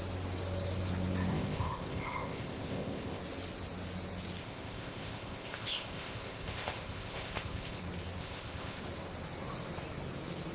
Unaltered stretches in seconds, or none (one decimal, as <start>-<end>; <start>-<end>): 0.0-1.3; 3.2-4.4; 7.8-8.2; 8.8-10.5